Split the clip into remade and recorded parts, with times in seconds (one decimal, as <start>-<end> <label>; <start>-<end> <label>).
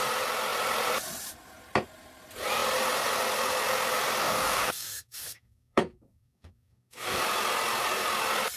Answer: 0.0-4.2 recorded; 4.2-7.2 remade; 7.2-8.6 recorded